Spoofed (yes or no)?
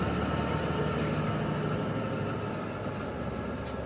no